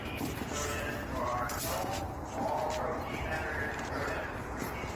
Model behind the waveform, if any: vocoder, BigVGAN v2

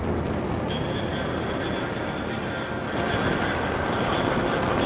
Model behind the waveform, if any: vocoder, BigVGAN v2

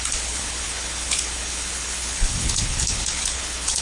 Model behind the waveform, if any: codec, HILCodec